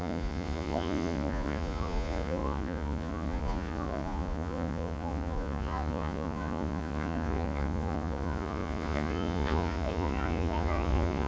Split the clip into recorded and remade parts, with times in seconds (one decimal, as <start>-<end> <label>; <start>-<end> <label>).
0.0-11.3 remade